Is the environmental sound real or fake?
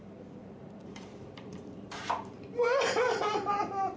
fake